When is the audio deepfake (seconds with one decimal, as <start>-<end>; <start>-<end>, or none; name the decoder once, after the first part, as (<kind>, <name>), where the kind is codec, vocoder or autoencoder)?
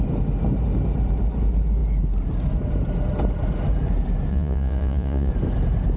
4.3-5.3 (vocoder, Vocos)